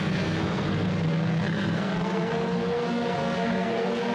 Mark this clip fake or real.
fake